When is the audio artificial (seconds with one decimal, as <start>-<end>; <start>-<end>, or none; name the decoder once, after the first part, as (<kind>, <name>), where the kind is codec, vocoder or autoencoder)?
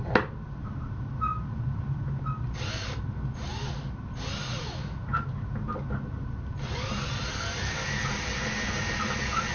none